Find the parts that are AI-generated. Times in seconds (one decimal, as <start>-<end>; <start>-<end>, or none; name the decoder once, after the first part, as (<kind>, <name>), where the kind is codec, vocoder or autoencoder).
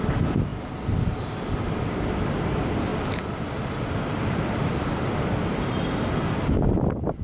2.9-7.2 (vocoder, BigVGAN v2)